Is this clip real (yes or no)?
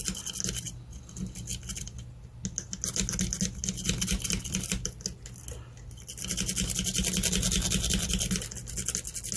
yes